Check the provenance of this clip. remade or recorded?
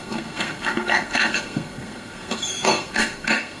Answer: remade